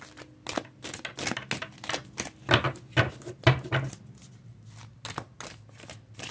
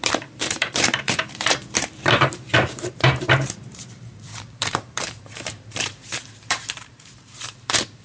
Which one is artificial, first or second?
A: second